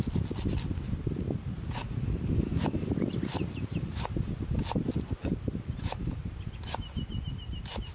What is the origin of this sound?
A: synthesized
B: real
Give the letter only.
B